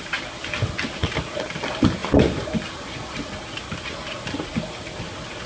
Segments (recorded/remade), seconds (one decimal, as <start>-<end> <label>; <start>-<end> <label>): 0.0-5.5 recorded